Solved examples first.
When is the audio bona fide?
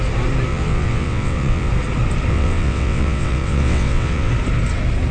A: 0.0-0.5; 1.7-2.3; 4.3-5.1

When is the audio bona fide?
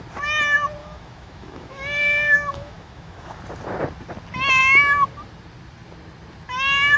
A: 0.0-0.8; 3.4-7.0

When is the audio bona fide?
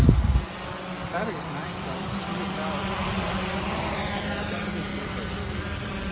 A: 0.0-1.6; 4.2-4.9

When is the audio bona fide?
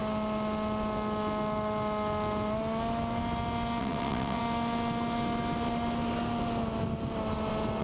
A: 0.0-3.8; 4.4-7.8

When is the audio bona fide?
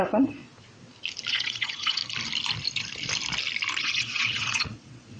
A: 0.4-1.3; 2.0-3.8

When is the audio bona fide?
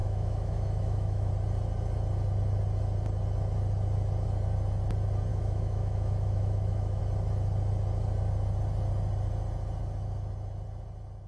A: 1.3-5.3; 7.0-11.3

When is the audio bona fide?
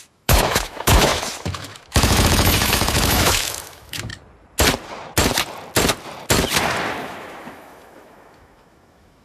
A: 4.1-7.0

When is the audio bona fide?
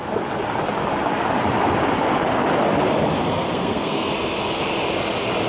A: 0.0-3.3; 4.1-5.5